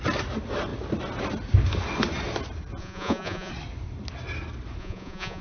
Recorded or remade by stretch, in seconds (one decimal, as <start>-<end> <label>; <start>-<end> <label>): 0.0-2.8 recorded; 2.8-3.5 remade; 3.5-4.8 recorded; 4.8-5.4 remade

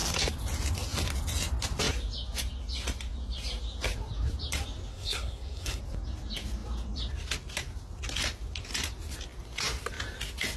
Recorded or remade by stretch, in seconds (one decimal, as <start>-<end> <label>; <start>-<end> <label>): 0.0-4.9 recorded; 4.9-5.8 remade; 5.8-10.6 recorded

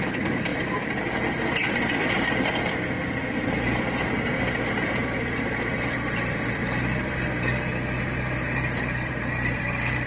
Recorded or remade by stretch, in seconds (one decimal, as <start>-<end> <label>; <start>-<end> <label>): 0.0-0.5 remade; 0.5-3.5 recorded; 3.5-10.1 remade

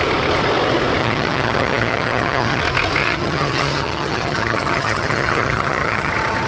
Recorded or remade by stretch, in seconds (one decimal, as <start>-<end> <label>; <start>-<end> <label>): 0.0-1.0 recorded; 1.0-2.6 remade; 2.6-3.0 recorded; 3.0-6.1 remade; 6.1-6.5 recorded

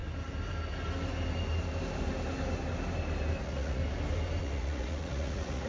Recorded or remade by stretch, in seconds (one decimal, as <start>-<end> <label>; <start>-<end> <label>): 0.0-3.4 recorded; 3.4-3.8 remade; 3.8-4.4 recorded; 4.4-5.7 remade